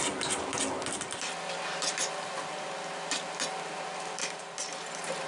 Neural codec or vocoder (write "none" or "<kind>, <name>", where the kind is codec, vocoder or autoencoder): none